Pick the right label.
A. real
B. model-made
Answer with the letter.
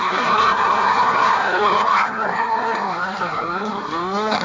B